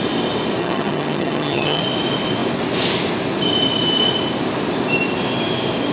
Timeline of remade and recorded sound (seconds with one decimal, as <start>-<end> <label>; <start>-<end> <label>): 0.0-0.6 recorded; 0.6-1.8 remade; 1.8-5.9 recorded